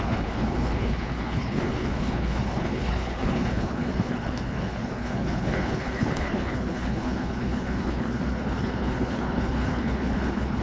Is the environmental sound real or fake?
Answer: fake